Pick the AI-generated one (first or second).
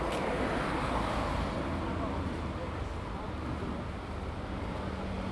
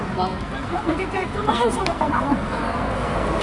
second